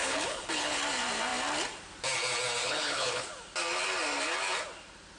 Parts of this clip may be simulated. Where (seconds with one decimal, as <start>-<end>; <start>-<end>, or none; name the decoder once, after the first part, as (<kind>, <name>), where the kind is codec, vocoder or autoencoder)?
0.0-0.8 (codec, HILCodec); 2.6-3.3